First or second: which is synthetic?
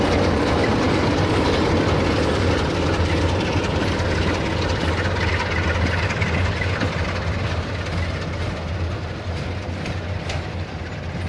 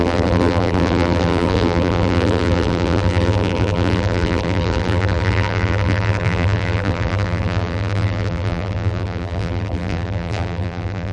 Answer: second